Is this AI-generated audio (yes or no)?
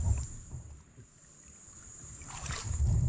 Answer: yes